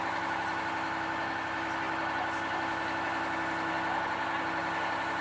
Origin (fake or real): real